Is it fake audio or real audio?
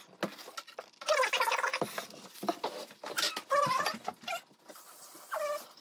real